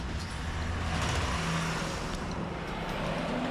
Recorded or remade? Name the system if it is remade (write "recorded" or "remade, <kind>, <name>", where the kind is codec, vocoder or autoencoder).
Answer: recorded